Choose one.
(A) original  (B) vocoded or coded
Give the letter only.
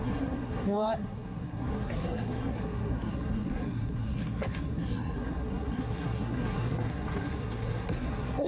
B